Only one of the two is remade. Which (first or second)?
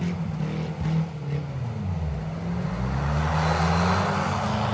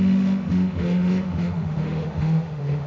second